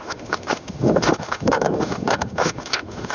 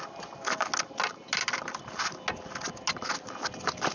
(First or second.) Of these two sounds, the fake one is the first